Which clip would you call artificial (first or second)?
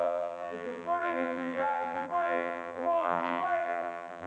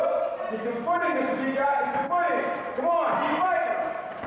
first